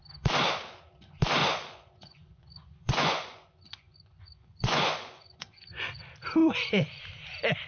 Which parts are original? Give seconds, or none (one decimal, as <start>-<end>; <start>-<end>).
0.0-1.4; 6.0-6.4; 7.0-7.7